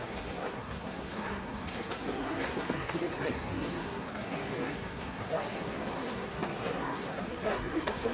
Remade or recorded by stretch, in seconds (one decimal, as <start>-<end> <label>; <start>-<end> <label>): 0.0-8.1 remade